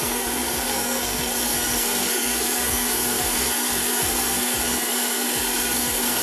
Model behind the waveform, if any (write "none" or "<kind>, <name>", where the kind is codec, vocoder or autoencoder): codec, SNAC